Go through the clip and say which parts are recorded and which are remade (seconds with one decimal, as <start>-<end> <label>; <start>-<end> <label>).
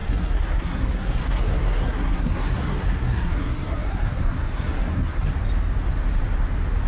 0.0-5.3 remade; 5.3-6.9 recorded